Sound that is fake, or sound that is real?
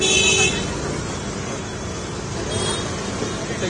real